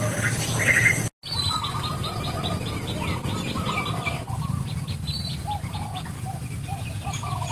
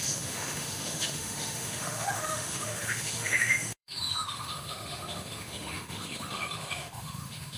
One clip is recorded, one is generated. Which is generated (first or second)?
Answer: second